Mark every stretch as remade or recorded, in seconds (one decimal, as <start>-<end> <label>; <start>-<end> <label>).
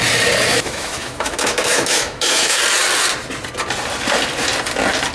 0.0-0.5 recorded; 0.5-2.6 remade; 2.6-5.1 recorded